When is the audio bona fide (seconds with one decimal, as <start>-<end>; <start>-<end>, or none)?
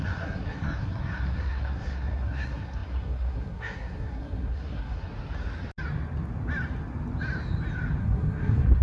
5.1-8.0